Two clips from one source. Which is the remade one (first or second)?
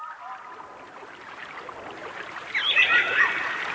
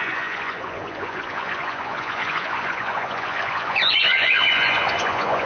second